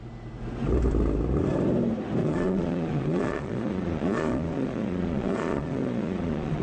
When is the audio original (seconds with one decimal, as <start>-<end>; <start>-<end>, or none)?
0.0-2.2